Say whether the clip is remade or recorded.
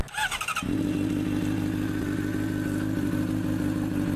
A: recorded